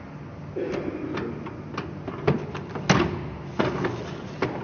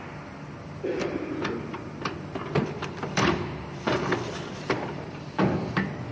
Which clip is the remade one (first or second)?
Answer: second